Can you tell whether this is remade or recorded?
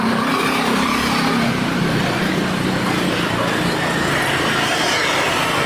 recorded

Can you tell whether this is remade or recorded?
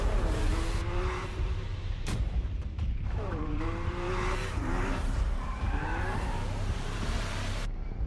remade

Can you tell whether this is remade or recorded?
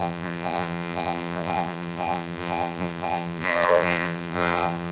remade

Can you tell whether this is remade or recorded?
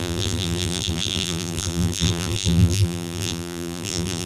remade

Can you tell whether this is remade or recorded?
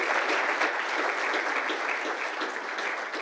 recorded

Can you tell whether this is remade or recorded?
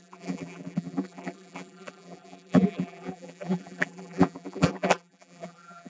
remade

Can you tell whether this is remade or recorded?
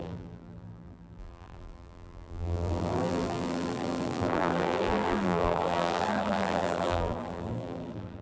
remade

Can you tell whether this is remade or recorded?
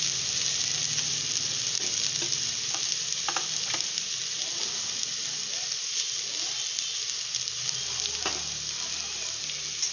recorded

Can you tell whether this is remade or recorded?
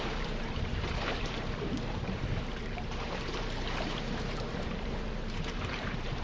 remade